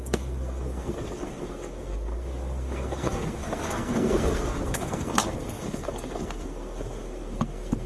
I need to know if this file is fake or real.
fake